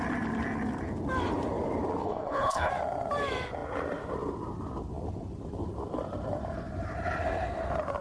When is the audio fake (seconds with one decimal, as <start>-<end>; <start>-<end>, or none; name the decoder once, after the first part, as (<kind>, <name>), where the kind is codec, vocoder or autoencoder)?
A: 2.0-2.7 (codec, HILCodec)